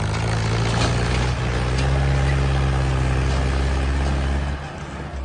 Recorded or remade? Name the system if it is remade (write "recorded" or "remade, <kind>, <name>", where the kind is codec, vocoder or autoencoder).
recorded